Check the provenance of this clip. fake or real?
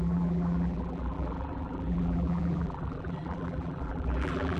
fake